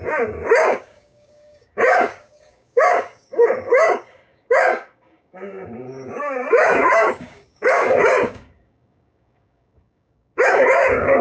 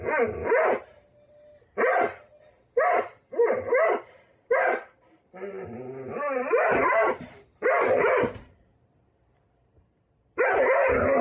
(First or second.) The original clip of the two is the second